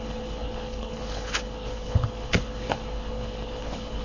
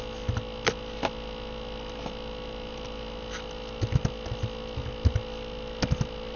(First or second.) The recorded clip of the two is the second